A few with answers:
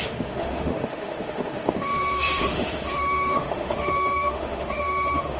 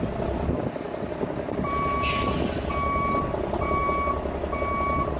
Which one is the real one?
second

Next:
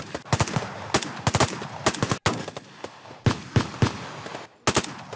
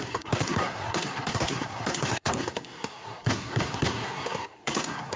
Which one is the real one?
first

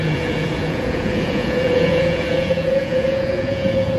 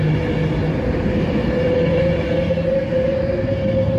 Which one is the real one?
second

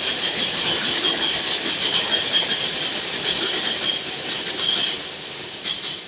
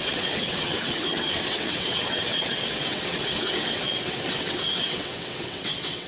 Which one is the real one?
first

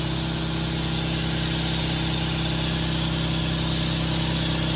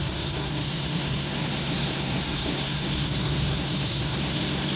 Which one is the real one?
first